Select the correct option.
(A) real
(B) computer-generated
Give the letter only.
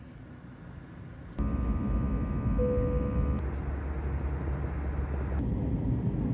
A